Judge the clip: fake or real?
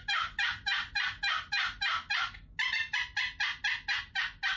real